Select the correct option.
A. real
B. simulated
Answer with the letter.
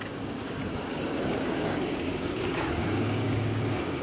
B